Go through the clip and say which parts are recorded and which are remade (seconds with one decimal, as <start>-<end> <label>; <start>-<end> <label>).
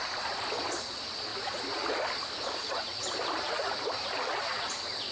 0.0-5.1 recorded